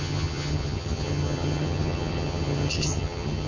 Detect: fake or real fake